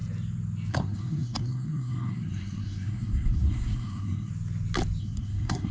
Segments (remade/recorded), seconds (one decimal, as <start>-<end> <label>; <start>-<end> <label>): 0.0-0.7 recorded; 0.7-4.3 remade; 4.3-5.0 recorded; 5.0-5.7 remade